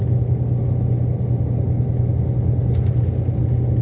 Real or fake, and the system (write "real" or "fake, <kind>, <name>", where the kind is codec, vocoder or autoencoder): real